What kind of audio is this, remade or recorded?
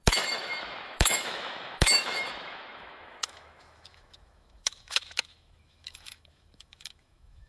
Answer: remade